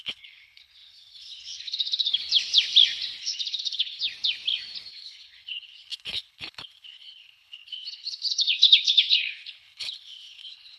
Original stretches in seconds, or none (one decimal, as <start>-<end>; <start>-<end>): 2.1-3.2; 4.0-4.9